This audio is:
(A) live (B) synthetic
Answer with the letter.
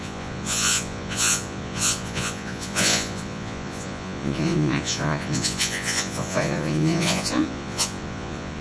B